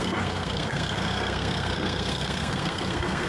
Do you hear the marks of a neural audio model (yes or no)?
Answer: yes